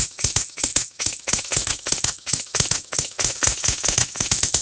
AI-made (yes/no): yes